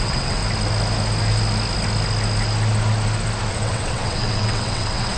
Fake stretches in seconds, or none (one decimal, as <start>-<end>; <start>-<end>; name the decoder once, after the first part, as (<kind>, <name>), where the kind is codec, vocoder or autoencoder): 0.0-0.4 (vocoder, WaveNeXt); 3.5-5.2